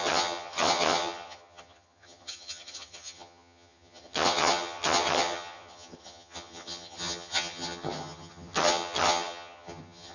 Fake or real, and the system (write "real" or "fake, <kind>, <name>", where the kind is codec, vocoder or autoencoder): fake, vocoder, HiFi-GAN